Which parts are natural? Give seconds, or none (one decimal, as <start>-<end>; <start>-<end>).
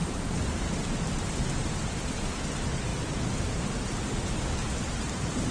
0.0-5.5